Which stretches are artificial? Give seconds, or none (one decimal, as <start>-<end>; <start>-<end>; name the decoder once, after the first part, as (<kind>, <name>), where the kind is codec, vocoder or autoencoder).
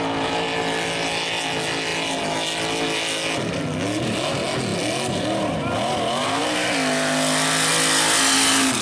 none